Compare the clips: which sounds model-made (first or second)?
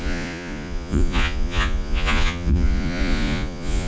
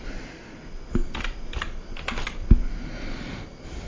first